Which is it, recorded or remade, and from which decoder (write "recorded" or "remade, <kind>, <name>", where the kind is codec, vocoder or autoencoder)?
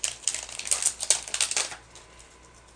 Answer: recorded